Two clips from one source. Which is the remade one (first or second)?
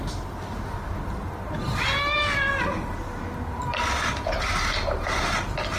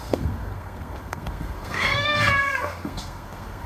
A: second